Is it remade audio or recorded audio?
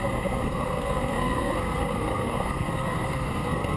remade